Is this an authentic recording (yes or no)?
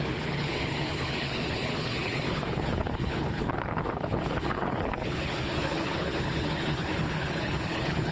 no